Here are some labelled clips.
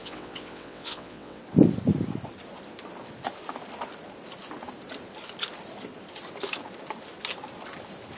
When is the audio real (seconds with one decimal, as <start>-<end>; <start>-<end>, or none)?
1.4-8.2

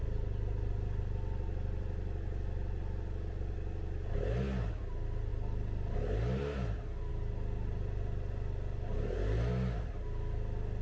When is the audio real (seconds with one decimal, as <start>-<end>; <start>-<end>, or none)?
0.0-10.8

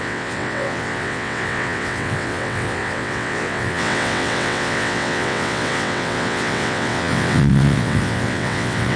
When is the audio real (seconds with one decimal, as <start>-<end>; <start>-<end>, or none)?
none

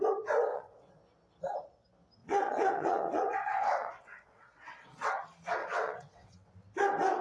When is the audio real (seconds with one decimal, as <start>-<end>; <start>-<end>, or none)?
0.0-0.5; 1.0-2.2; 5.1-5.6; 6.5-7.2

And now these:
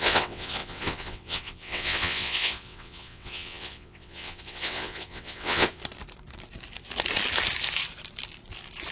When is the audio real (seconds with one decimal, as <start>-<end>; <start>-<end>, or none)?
5.8-8.9

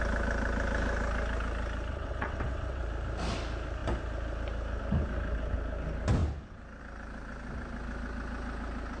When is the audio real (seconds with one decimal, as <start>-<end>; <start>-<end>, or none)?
0.0-1.9; 2.8-9.0

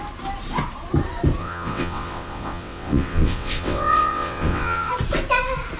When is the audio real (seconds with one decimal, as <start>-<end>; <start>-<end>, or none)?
0.0-1.4; 4.9-5.8

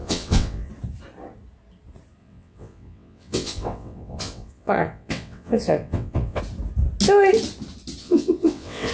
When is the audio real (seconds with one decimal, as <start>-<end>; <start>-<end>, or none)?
0.7-2.2; 6.4-8.0